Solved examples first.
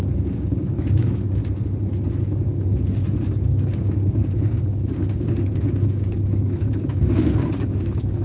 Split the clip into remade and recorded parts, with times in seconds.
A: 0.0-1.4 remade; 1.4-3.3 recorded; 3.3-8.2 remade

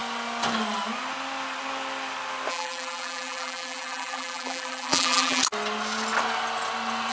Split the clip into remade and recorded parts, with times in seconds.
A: 0.0-2.5 recorded; 2.5-5.4 remade; 5.4-7.1 recorded